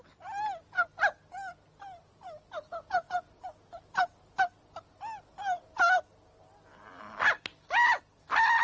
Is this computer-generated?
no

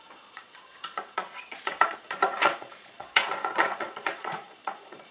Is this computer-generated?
yes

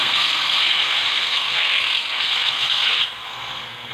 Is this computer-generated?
yes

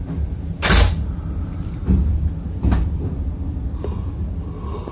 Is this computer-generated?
no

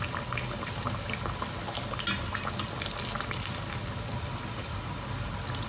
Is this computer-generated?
no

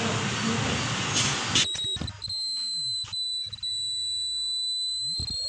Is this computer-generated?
no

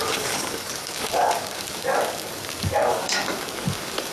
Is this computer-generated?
yes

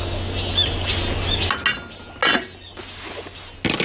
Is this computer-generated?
no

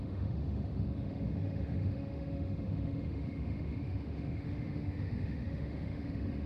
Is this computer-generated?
yes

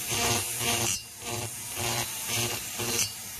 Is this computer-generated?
yes